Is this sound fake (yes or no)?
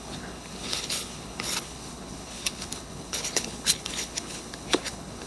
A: yes